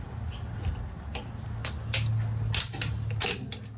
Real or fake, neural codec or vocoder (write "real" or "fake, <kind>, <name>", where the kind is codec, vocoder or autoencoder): real